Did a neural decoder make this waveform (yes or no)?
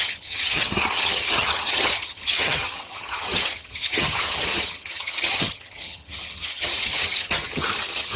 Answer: yes